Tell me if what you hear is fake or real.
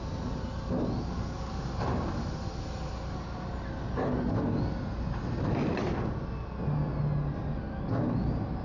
real